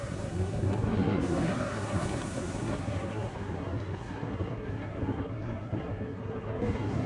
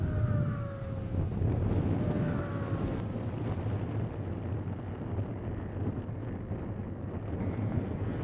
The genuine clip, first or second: second